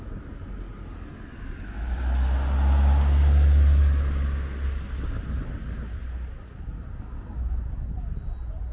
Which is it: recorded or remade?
recorded